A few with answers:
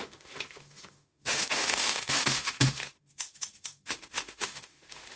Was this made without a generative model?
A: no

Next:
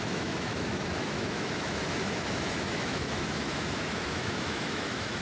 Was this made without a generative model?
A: no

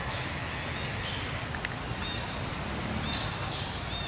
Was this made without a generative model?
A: yes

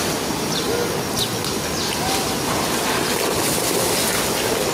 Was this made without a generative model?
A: yes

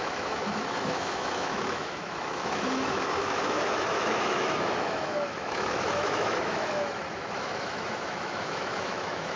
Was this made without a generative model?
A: no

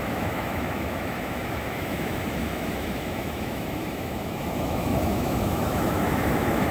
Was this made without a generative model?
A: no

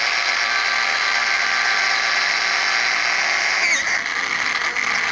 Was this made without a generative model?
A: yes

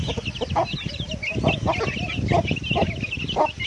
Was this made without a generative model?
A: yes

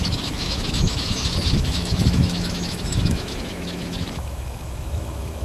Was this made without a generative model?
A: no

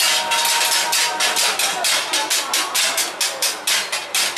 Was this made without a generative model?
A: yes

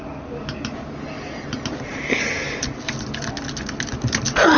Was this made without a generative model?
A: yes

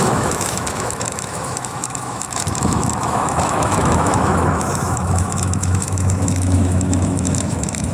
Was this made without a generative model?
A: no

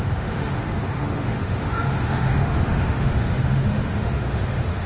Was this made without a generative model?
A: no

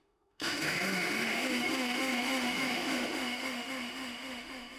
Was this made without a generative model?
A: no